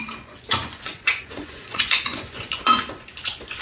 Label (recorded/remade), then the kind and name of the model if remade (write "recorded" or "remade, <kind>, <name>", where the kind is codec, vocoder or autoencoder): remade, vocoder, Vocos